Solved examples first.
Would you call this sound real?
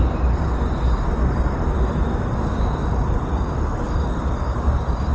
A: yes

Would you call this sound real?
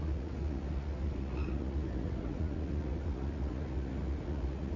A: no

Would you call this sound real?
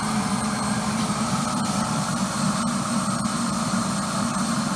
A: no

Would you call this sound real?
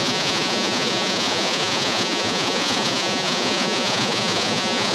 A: no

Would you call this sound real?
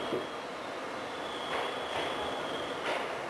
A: no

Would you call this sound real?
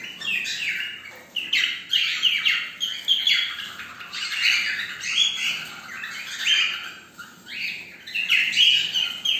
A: yes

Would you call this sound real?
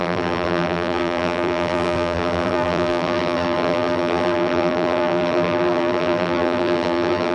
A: no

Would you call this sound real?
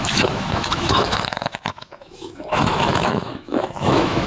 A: no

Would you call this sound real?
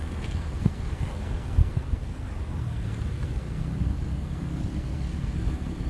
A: no